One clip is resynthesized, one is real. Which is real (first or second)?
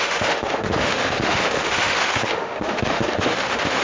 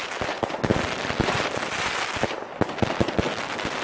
second